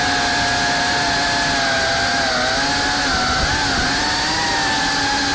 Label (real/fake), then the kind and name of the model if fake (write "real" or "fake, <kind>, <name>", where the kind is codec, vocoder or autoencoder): real